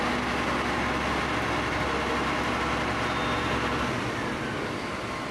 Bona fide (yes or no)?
yes